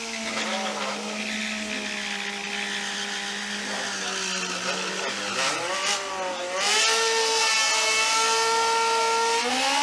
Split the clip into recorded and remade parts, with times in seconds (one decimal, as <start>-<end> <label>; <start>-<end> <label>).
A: 0.0-9.8 recorded